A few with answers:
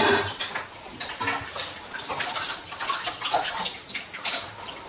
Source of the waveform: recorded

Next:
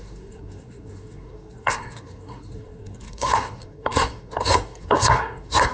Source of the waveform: remade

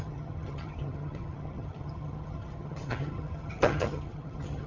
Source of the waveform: remade